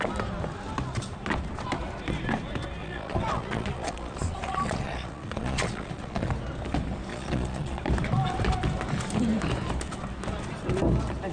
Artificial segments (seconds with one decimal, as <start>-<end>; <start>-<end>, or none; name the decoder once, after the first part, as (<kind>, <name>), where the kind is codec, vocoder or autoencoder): 2.8-6.3 (vocoder, Vocos); 7.1-7.8

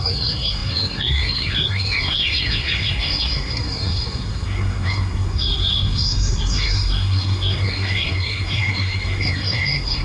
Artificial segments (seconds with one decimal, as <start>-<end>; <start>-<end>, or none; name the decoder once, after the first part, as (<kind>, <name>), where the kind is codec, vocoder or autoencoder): 0.0-10.0 (codec, SNAC)

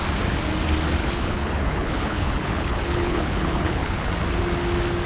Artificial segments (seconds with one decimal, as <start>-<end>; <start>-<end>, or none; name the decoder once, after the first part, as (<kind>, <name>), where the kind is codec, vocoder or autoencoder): 1.0-4.1 (codec, HILCodec)

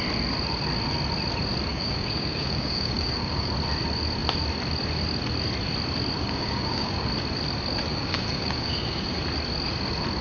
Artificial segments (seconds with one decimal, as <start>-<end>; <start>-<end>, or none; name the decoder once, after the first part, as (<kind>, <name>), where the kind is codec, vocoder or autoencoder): 1.7-3.5 (codec, DAC); 6.2-7.1; 7.9-9.2

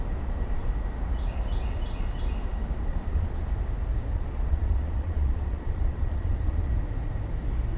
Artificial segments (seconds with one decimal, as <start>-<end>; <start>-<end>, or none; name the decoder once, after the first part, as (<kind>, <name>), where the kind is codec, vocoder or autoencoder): 2.9-3.5 (vocoder, Vocos); 4.1-6.7